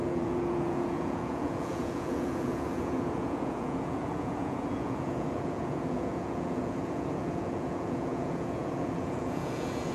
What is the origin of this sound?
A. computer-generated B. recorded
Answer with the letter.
A